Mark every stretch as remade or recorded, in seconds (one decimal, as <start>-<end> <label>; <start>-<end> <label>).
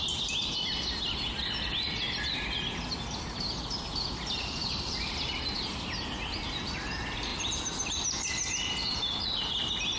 0.0-10.0 recorded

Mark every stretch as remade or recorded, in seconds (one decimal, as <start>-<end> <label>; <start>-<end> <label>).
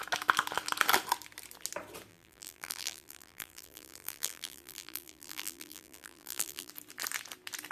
0.0-2.1 recorded; 2.1-6.7 remade; 6.7-7.7 recorded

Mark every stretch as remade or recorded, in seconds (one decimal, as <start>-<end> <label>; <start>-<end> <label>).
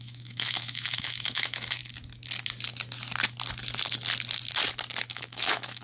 0.0-1.8 remade; 1.8-5.1 recorded; 5.1-5.8 remade